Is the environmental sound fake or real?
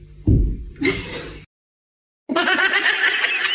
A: real